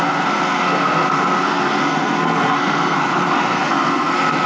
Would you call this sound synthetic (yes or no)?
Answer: yes